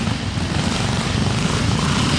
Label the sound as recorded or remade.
recorded